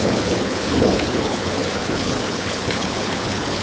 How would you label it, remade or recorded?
remade